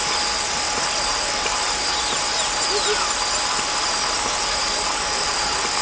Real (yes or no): yes